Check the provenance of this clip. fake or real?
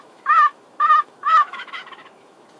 fake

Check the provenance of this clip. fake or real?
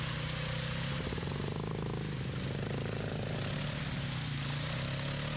real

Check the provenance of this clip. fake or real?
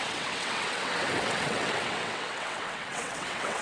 fake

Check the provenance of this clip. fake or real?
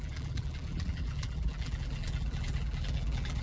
fake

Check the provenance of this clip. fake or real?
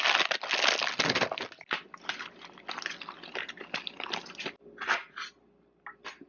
real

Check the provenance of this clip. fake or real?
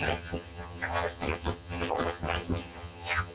fake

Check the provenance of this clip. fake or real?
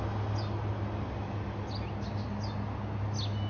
real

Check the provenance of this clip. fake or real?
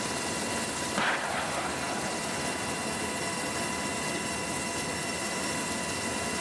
real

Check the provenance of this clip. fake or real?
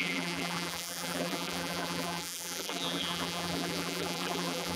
fake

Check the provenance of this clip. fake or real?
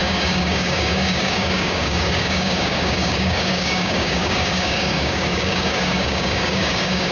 fake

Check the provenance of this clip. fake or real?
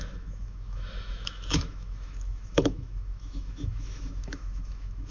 fake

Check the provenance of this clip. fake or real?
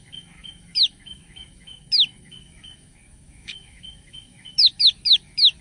fake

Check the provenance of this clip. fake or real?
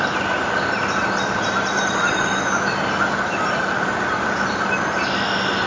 real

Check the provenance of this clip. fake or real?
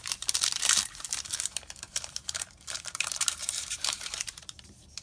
fake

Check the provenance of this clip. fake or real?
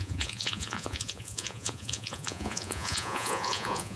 fake